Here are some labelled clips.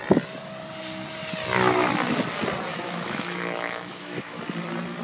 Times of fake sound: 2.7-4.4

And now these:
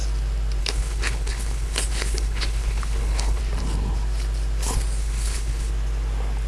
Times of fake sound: 0.6-3.4; 5.0-5.7